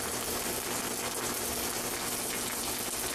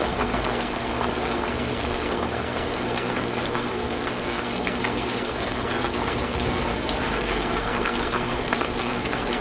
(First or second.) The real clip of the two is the first